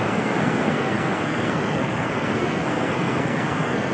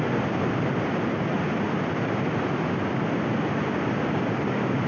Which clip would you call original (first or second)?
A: second